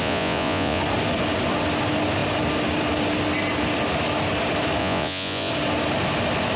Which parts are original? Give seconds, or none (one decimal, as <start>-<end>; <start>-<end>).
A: 0.8-4.8; 5.5-6.6